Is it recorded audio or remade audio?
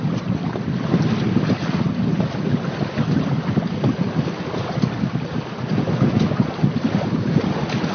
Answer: recorded